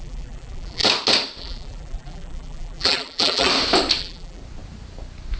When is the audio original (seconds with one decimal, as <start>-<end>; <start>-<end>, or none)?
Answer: 0.8-1.4; 3.5-4.0; 4.4-5.4